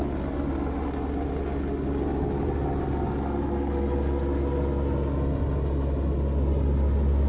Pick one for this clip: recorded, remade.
recorded